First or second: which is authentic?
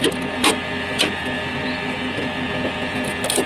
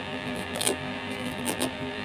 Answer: first